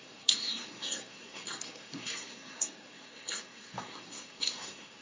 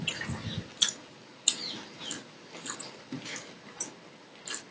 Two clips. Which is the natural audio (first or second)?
second